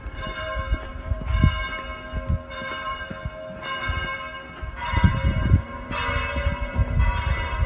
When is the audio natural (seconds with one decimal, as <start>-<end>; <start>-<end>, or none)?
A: 1.4-2.5; 3.1-4.7